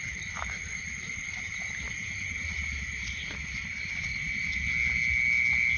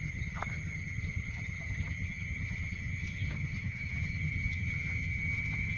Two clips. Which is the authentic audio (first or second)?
first